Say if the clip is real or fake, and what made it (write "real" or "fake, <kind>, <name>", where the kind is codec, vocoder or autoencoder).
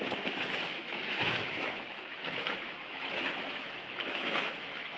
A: fake, autoencoder, DAC-VAE